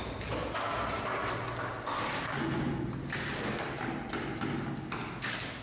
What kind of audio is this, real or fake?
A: real